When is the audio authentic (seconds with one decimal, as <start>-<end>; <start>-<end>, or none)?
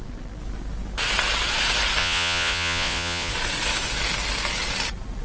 0.0-2.0; 3.3-5.2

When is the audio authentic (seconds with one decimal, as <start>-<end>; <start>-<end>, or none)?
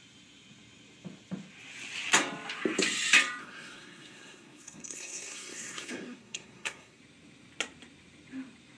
0.0-3.4; 7.0-8.8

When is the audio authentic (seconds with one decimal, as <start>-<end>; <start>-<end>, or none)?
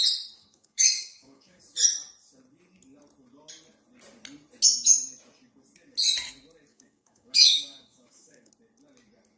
0.0-0.4; 1.6-6.7; 8.5-9.4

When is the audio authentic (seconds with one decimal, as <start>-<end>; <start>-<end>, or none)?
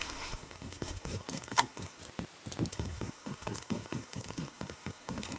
2.0-2.7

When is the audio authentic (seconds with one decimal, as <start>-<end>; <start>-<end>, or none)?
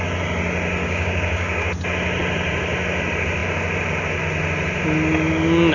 0.0-0.8; 1.7-5.7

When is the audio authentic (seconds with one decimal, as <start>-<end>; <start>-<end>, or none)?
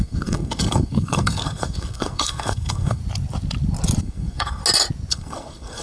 3.0-4.0; 4.6-5.1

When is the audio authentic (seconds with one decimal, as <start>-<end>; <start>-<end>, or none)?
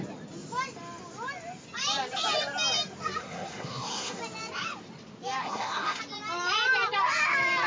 0.0-3.2; 4.2-5.4; 6.0-7.7